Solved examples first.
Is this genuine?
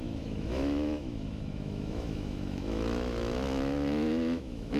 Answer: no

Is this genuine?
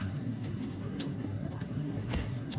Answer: no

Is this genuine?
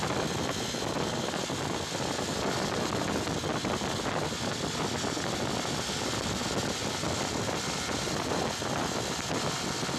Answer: yes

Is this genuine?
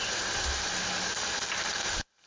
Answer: yes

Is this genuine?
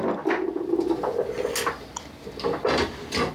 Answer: yes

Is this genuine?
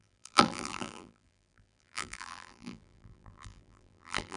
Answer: no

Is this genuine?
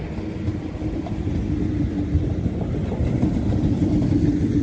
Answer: yes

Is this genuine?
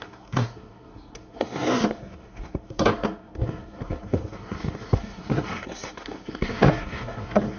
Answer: no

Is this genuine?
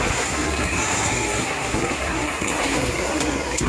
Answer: no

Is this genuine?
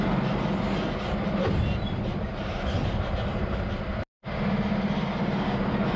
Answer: yes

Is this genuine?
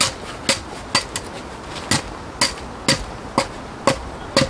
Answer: yes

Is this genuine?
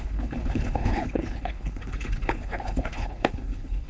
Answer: no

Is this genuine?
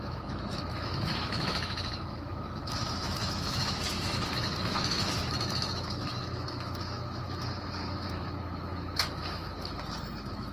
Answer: no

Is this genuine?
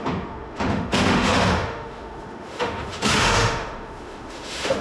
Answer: no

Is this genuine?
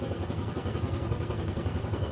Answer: no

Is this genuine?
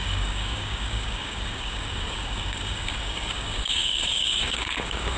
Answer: no